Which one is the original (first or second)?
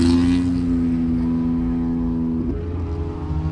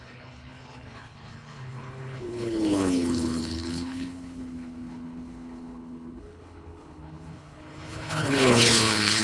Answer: first